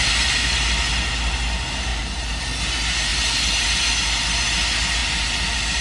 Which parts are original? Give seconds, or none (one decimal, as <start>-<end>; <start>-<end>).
0.0-1.9; 2.4-5.8